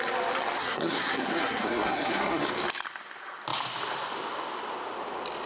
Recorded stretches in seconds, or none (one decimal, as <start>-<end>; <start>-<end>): 0.0-0.6; 2.5-5.5